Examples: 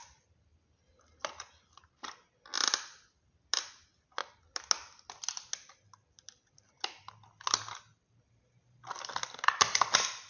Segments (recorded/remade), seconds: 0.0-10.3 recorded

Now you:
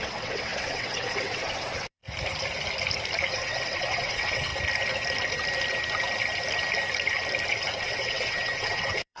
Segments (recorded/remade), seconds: 0.0-2.0 remade; 2.0-3.3 recorded; 3.3-4.5 remade; 4.5-7.8 recorded; 7.8-9.2 remade

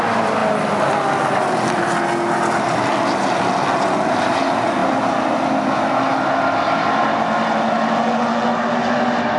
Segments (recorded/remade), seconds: 0.0-9.4 recorded

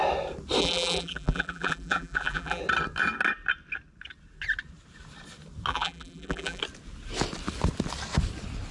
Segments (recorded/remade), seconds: 0.0-0.6 recorded; 0.6-2.6 remade; 2.6-5.7 recorded; 5.7-6.6 remade; 6.6-8.7 recorded

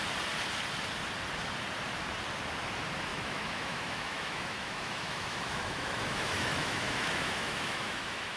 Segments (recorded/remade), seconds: 0.0-3.1 recorded; 3.1-8.4 remade

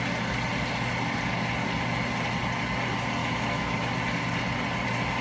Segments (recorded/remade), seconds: 0.0-3.2 recorded; 3.2-3.8 remade; 3.8-5.2 recorded

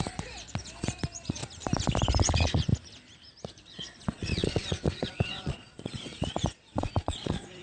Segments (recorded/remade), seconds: 0.0-1.4 remade; 1.4-2.2 recorded; 2.2-2.7 remade; 2.7-3.5 recorded; 3.5-7.6 remade

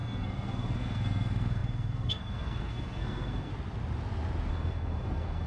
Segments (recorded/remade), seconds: 0.0-3.5 remade; 3.5-4.5 recorded; 4.5-5.5 remade